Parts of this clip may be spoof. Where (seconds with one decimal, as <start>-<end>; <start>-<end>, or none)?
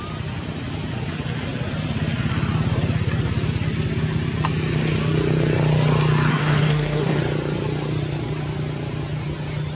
6.3-7.2